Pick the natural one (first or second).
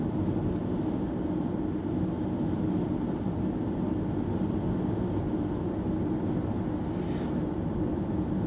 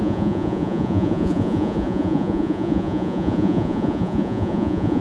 first